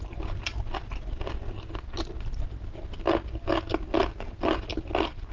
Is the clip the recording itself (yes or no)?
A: yes